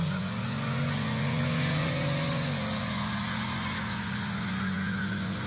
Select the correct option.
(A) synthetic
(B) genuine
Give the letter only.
A